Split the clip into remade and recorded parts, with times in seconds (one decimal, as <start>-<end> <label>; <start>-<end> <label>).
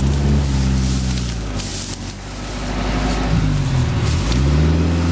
0.0-5.1 recorded